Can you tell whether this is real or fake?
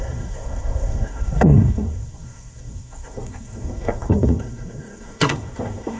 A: fake